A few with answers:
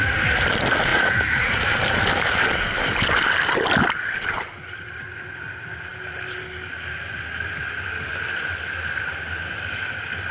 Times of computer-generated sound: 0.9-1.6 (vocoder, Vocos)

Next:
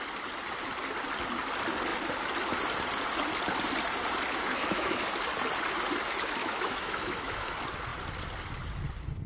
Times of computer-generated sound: 4.5-5.0 (autoencoder, DAC-VAE); 6.4-7.5

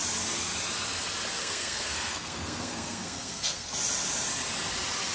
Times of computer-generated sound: 1.4-3.7 (codec, SNAC)

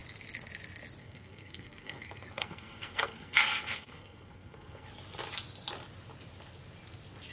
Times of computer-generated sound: 1.0-4.9 (codec, SNAC)